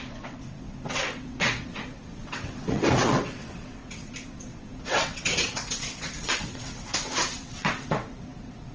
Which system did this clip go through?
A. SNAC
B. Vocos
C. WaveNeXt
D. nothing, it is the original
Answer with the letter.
C